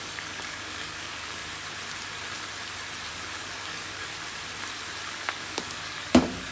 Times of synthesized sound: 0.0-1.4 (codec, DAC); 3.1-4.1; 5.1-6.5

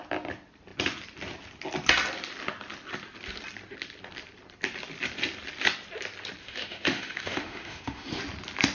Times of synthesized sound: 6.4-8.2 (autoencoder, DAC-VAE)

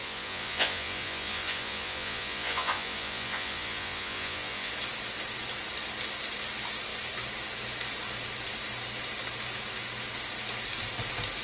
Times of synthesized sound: 0.0-4.7 (vocoder, Vocos)